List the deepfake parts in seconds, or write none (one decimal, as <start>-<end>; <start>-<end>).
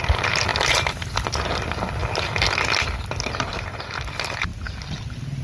none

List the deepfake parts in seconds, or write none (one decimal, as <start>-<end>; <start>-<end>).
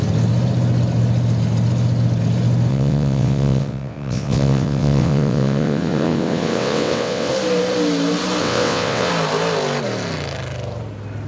2.7-7.3; 8.4-9.1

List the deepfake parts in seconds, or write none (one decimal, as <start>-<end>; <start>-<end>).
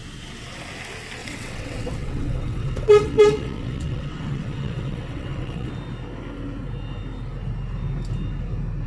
1.2-5.7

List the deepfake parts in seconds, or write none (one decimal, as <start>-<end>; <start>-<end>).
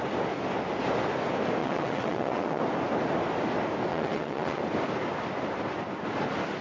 1.6-2.6; 3.9-4.6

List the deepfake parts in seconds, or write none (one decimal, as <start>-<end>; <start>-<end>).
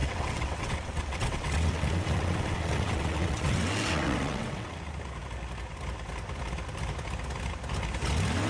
0.0-4.8